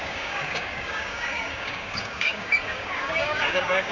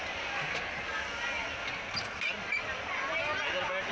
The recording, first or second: second